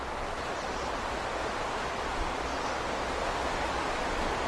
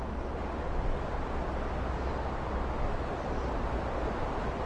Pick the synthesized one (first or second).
first